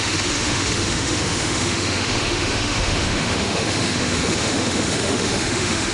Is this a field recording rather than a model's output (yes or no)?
no